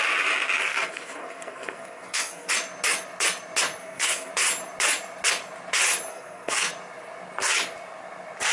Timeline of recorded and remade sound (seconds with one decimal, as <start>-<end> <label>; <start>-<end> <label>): 0.0-0.6 recorded; 0.6-2.5 remade; 2.5-3.8 recorded; 3.8-4.3 remade; 4.3-6.1 recorded; 6.1-6.7 remade; 6.7-8.5 recorded